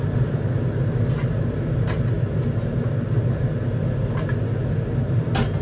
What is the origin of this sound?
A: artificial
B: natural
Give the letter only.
B